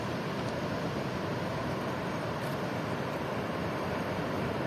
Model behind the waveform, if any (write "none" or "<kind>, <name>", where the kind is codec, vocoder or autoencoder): vocoder, BigVGAN v2